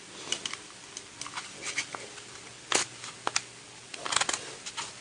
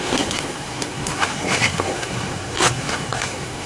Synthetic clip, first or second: second